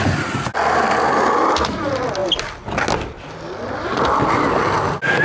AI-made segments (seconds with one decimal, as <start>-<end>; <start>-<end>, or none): none